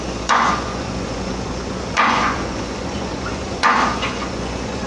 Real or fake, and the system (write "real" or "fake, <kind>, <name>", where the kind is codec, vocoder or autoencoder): fake, vocoder, Vocos